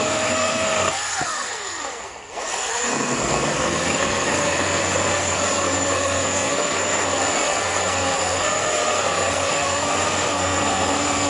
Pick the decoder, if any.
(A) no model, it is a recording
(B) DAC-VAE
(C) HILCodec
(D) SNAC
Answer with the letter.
D